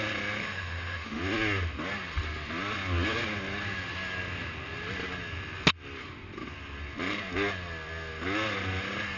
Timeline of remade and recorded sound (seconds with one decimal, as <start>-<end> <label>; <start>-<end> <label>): 0.0-0.4 recorded; 0.4-1.2 remade; 1.2-9.2 recorded